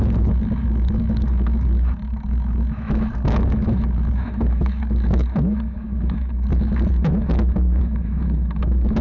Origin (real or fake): fake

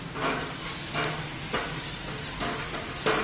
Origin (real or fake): real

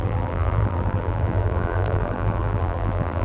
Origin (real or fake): fake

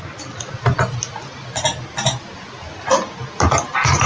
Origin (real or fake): real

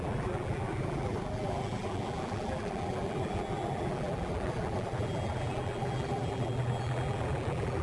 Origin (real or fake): fake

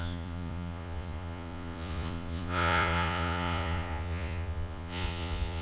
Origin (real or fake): fake